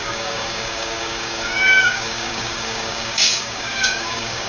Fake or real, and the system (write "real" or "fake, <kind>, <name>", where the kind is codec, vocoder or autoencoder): fake, codec, DAC